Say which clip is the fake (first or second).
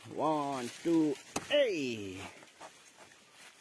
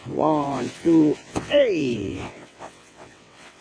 second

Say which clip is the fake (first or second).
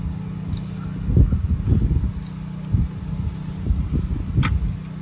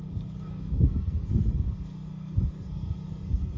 second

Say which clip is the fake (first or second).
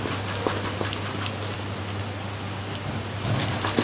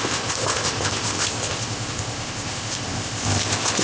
second